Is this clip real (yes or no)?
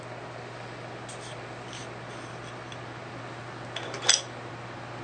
yes